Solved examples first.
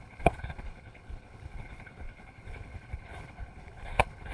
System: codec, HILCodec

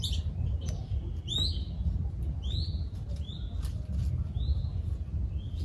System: none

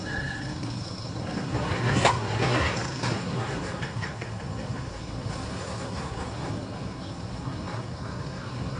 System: codec, SNAC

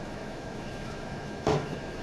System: autoencoder, DAC-VAE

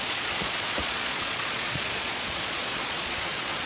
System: vocoder, Vocos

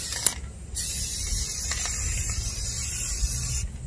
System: none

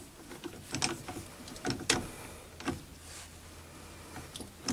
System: none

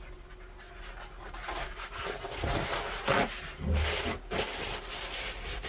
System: none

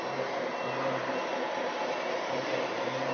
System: none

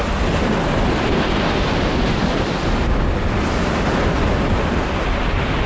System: none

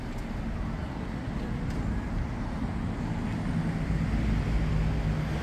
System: none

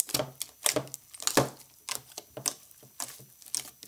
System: none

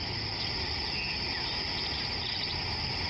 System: none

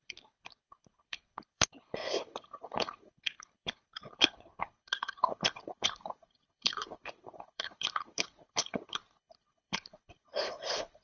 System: codec, HILCodec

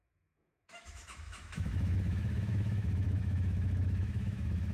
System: autoencoder, DAC-VAE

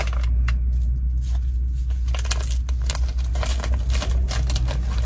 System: none